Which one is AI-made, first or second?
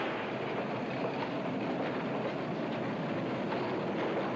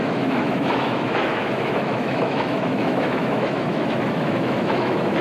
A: second